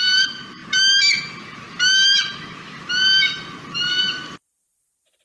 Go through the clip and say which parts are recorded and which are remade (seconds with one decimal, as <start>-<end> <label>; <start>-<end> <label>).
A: 0.0-0.6 remade; 0.6-3.7 recorded; 3.7-5.2 remade